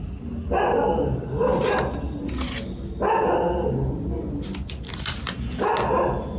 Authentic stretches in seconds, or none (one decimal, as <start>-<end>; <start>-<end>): 0.0-6.4